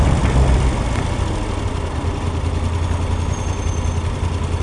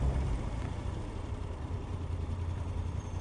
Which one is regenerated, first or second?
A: second